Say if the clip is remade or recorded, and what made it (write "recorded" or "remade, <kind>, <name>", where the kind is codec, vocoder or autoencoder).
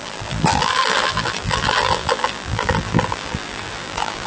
remade, vocoder, BigVGAN v2